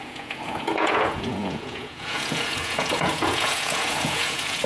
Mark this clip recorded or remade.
remade